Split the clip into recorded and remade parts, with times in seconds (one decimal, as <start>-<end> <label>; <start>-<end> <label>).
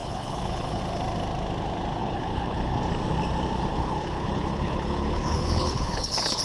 0.0-0.8 remade; 0.8-2.0 recorded; 2.0-2.8 remade; 2.8-3.7 recorded; 3.7-6.4 remade